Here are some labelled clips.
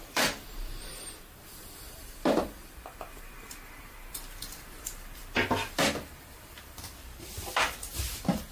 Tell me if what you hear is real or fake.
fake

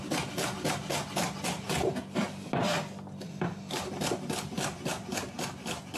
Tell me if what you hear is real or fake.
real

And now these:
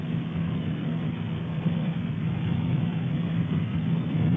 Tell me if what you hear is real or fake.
fake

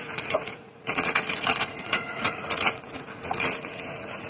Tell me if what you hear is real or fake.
fake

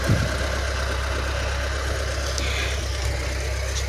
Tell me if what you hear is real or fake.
real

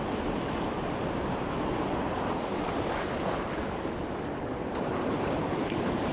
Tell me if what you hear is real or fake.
real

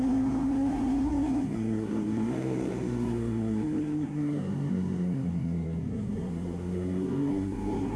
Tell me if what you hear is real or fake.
fake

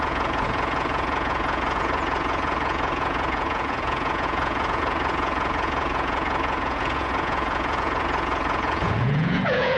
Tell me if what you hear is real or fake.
fake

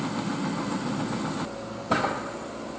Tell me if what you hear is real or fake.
real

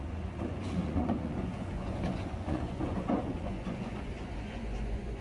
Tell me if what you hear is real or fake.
fake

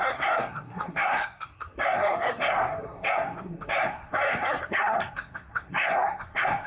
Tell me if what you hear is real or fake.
fake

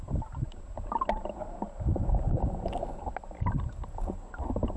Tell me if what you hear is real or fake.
real